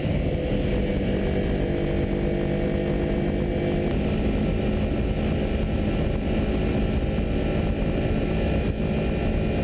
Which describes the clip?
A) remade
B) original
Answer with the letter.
B